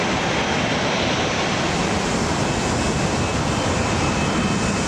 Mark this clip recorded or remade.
recorded